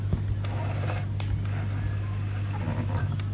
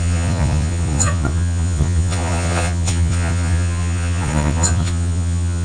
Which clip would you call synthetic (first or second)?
second